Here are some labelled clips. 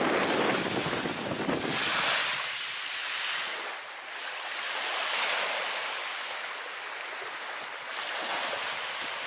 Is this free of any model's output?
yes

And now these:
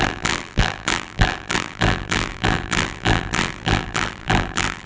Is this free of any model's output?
no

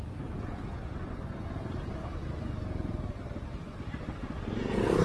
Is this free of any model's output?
yes